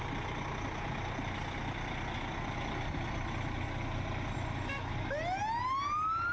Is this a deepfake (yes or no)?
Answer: no